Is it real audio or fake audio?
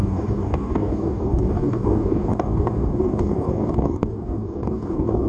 fake